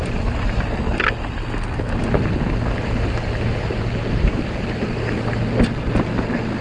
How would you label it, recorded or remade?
recorded